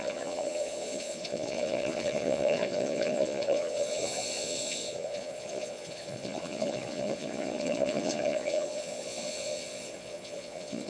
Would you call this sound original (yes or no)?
no